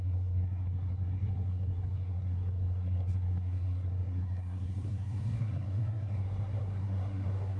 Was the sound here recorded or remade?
remade